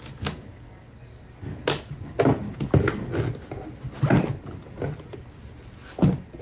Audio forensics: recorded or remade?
recorded